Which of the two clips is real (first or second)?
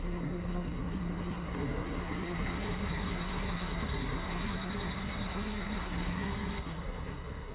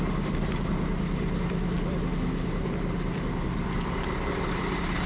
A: second